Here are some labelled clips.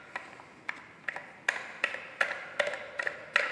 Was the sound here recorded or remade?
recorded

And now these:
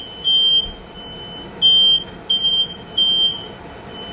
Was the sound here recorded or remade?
recorded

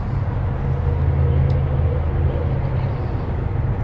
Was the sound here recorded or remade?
recorded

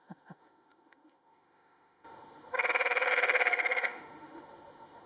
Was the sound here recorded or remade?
remade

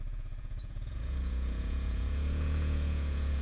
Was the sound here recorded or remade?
remade